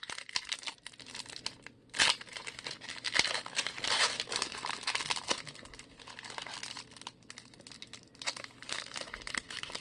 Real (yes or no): yes